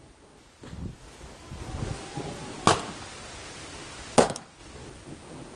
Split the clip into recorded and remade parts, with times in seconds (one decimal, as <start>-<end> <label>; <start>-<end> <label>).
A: 0.0-5.6 recorded

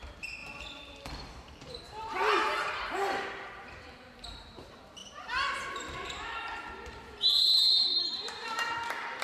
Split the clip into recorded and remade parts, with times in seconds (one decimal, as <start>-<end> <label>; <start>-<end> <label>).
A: 0.0-9.2 remade

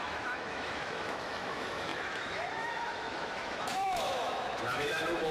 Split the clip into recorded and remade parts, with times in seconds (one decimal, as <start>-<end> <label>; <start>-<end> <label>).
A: 0.0-5.3 remade

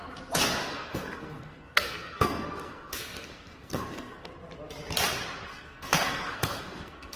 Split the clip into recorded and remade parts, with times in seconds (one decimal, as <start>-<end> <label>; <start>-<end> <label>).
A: 0.0-0.6 recorded; 0.6-4.3 remade; 4.3-5.5 recorded; 5.5-7.2 remade

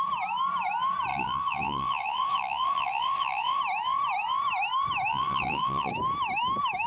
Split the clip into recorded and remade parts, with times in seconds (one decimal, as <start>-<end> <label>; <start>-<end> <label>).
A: 0.0-1.1 recorded; 1.1-3.6 remade; 3.6-5.1 recorded; 5.1-5.9 remade; 5.9-6.9 recorded